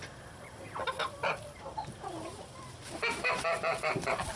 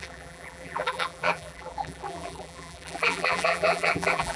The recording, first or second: first